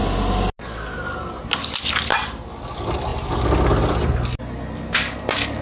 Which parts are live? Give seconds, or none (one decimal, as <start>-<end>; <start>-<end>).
0.0-5.6